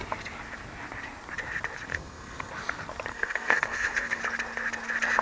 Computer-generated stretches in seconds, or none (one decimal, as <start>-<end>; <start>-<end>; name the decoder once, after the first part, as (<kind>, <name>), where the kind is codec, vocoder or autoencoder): 1.9-2.5 (codec, SNAC); 3.1-4.2